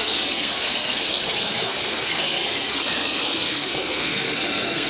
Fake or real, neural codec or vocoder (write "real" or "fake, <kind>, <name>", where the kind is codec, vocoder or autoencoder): fake, codec, SNAC